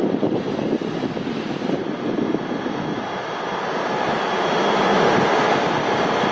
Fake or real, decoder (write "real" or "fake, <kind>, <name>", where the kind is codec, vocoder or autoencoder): real